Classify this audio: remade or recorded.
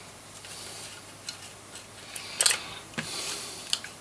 recorded